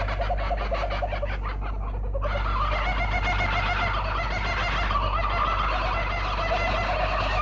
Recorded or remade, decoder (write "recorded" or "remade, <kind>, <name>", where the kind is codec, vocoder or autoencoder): recorded